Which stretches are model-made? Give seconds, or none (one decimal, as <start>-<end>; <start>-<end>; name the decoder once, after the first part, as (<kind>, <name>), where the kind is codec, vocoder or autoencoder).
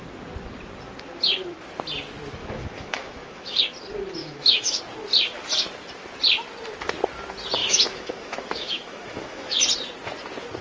2.4-3.6 (autoencoder, DAC-VAE); 4.2-4.8; 7.6-9.6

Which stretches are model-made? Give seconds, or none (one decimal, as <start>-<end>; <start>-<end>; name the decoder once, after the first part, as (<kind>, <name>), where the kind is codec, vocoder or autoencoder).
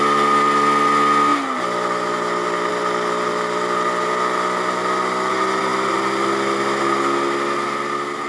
none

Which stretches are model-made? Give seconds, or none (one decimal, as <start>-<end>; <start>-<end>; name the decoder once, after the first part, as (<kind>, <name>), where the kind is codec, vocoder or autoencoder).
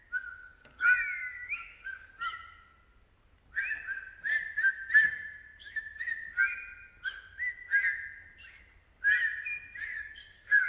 0.5-2.1 (codec, DAC); 9.9-10.7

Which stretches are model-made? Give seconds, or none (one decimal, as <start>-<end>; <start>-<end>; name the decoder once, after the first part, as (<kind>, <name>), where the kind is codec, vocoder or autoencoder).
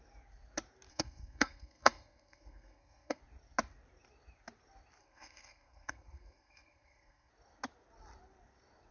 0.9-3.2 (codec, SNAC); 5.0-7.3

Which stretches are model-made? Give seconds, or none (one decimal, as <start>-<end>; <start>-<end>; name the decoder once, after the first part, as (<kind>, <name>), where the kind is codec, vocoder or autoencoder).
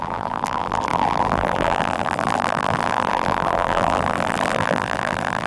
0.0-5.5 (vocoder, BigVGAN v2)